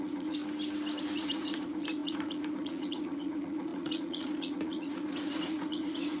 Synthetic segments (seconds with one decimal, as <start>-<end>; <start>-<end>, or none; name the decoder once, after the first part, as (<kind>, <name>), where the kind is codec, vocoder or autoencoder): 0.0-0.4 (vocoder, Vocos); 1.0-6.2